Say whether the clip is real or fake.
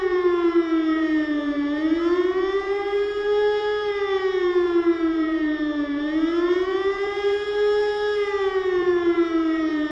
fake